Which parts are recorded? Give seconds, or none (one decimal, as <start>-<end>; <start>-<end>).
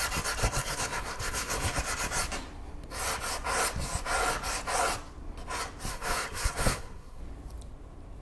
0.0-0.4; 1.8-5.9; 7.2-8.2